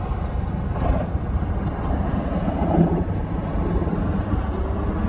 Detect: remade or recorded recorded